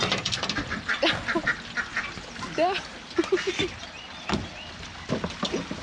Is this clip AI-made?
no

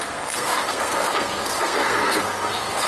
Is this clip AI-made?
yes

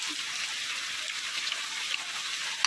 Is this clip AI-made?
no